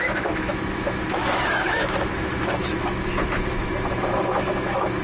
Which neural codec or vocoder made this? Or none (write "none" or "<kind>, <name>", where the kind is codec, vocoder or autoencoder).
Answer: autoencoder, DAC-VAE